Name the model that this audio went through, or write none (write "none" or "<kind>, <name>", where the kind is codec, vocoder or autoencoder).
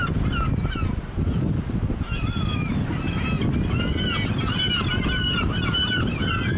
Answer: none